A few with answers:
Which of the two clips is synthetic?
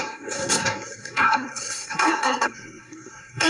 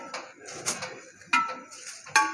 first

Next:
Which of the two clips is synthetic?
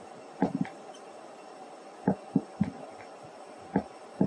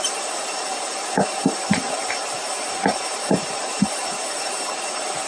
second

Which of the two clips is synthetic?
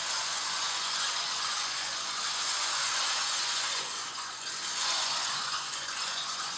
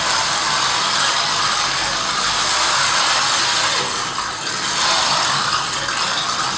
first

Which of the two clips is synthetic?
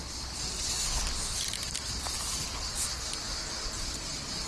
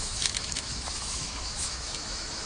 second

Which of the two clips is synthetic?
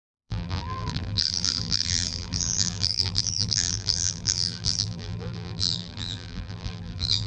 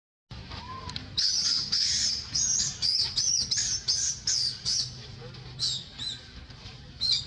first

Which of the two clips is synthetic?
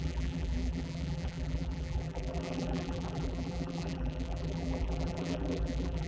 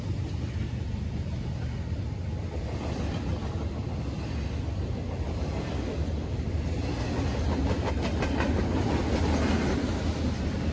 first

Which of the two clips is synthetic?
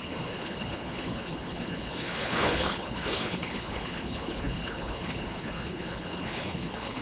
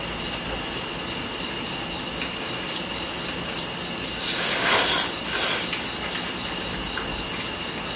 first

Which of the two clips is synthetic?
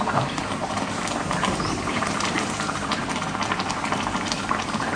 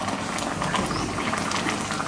first